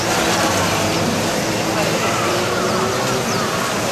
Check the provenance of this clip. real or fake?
real